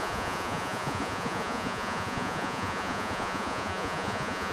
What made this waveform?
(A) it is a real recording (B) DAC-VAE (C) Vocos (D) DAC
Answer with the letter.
C